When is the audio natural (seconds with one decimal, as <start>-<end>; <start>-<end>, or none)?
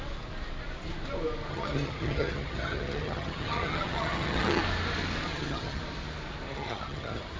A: 0.0-1.5; 4.6-5.3; 5.8-6.5